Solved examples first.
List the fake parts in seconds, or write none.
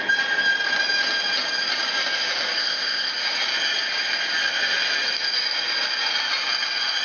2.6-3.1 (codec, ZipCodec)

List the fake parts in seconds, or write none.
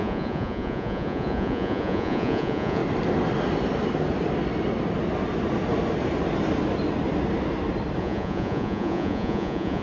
0.0-2.8 (vocoder, Vocos); 8.0-9.8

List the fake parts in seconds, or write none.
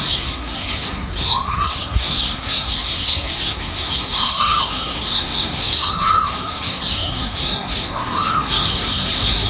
0.0-9.5 (codec, SNAC)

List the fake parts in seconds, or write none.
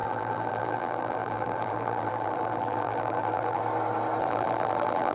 0.0-3.6 (vocoder, BigVGAN v2); 4.2-5.1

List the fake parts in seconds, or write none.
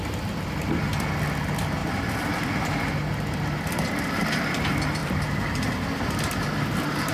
1.8-2.9 (vocoder, BigVGAN v2); 5.0-5.6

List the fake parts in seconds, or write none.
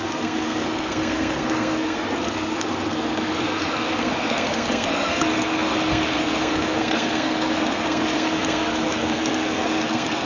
0.0-10.3 (codec, SNAC)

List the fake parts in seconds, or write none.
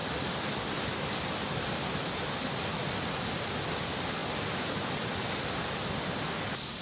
none